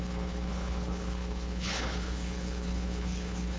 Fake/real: fake